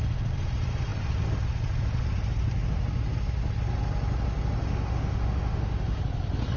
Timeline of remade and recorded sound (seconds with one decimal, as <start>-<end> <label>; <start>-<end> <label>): 0.0-4.6 recorded; 4.6-6.0 remade; 6.0-6.6 recorded